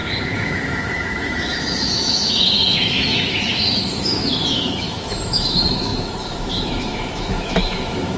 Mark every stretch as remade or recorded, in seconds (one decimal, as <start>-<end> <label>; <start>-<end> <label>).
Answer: 0.0-8.2 remade